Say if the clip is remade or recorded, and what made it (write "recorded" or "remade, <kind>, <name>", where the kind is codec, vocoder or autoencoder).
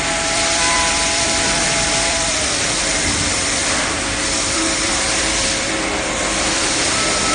remade, vocoder, BigVGAN v2